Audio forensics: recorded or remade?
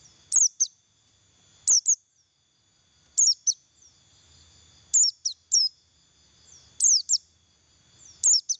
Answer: recorded